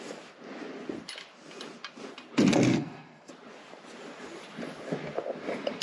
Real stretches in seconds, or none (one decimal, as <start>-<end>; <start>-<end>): 0.0-2.7; 3.3-5.8